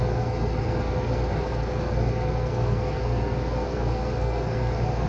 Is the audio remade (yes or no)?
yes